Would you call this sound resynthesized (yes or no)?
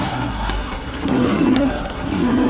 yes